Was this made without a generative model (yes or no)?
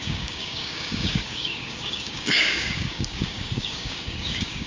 no